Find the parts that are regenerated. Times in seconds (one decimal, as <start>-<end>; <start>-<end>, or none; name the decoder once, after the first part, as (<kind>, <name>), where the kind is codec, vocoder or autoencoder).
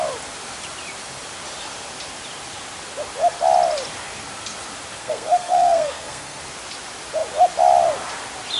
5.0-6.4 (codec, SNAC)